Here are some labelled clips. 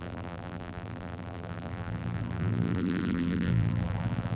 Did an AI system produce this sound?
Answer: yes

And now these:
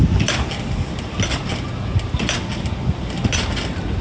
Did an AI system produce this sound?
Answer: no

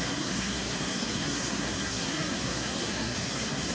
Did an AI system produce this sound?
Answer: yes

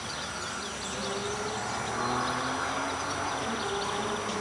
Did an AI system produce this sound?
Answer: no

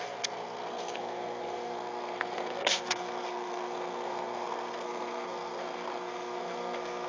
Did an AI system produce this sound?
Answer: yes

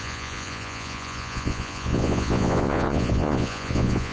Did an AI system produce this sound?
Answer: yes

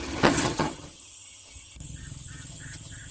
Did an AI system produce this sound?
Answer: yes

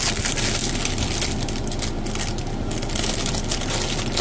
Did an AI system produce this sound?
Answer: no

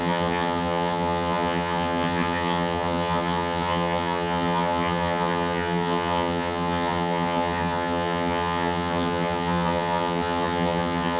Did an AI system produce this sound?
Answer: yes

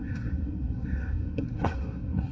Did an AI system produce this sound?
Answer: yes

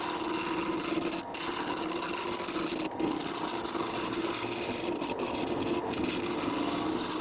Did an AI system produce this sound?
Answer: no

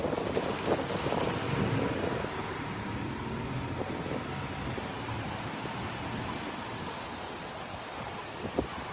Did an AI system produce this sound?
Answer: no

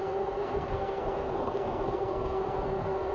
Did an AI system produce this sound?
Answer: yes